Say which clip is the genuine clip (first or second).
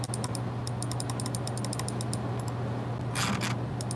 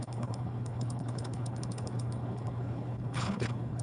first